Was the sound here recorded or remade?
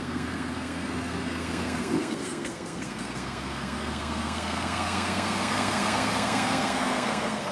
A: remade